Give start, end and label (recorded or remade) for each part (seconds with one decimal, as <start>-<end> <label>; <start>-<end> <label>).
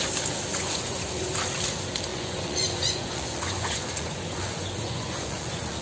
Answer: 0.0-0.5 recorded; 0.5-1.3 remade; 1.3-2.1 recorded; 2.1-5.8 remade